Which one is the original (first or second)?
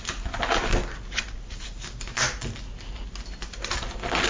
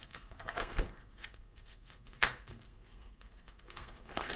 first